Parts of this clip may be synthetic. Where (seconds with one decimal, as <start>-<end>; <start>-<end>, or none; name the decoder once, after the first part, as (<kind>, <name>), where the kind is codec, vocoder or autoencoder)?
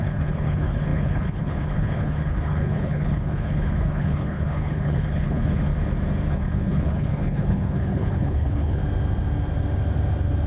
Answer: 0.0-5.7 (codec, HILCodec); 6.3-8.8